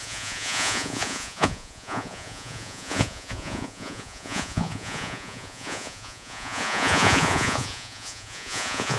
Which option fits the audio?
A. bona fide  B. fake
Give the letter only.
B